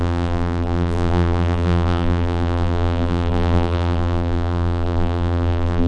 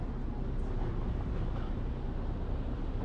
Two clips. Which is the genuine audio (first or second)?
second